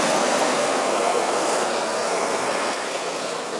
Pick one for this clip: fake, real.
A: fake